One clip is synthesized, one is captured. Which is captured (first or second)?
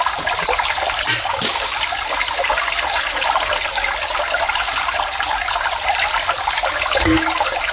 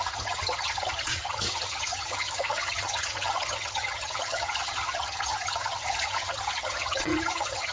first